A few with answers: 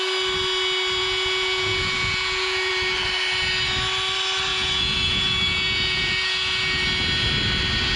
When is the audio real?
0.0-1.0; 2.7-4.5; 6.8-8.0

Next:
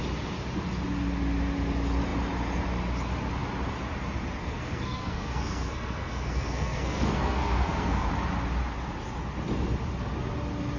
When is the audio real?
0.0-4.4; 8.1-10.8

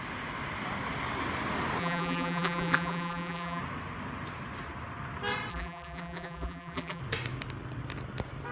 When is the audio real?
0.0-1.8; 3.6-5.5; 7.0-8.5

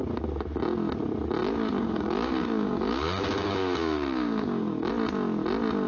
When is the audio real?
0.0-1.4; 4.9-5.9

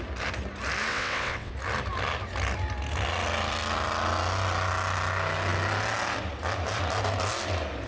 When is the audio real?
0.0-0.9; 1.5-7.9

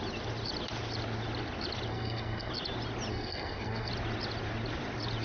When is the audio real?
0.0-1.9; 2.5-3.1; 3.9-5.2